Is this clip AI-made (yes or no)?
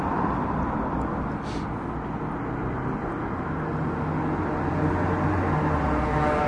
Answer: no